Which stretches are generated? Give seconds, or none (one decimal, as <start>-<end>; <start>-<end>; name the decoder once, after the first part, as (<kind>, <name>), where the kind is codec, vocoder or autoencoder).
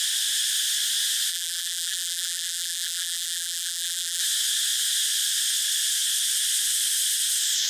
1.3-4.2 (vocoder, BigVGAN v2)